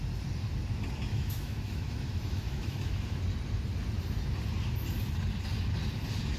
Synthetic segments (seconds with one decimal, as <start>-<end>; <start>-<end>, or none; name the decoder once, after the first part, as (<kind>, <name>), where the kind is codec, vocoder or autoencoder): 1.1-3.2 (autoencoder, DAC-VAE)